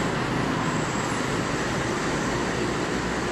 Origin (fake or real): real